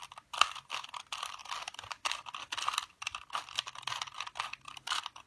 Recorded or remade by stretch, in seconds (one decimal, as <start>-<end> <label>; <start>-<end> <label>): 0.0-5.3 recorded